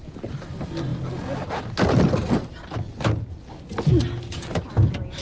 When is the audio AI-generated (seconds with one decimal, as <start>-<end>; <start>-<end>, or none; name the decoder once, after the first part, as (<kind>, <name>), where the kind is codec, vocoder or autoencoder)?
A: none